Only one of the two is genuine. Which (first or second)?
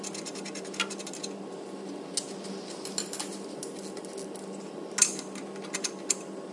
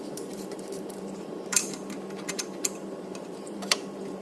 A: first